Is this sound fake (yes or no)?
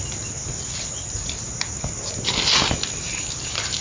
no